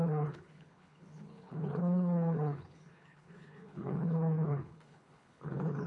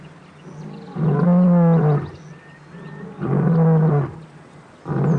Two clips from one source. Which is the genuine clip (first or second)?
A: second